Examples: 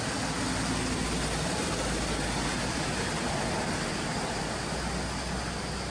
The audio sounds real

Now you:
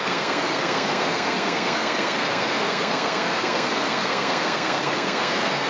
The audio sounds fake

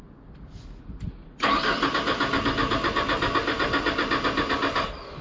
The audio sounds real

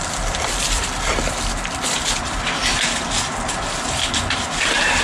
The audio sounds fake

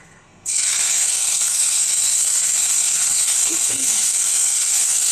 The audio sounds fake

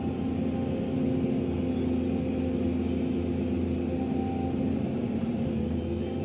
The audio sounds real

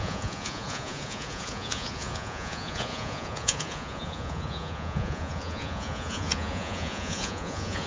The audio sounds fake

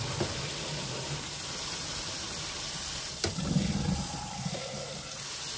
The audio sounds real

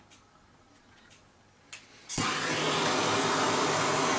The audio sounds real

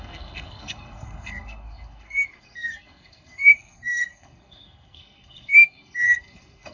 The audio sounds fake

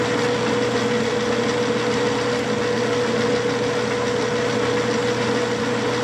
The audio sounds real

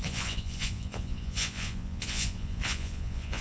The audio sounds fake